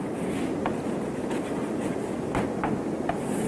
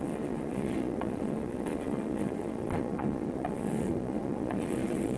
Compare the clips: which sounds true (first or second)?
first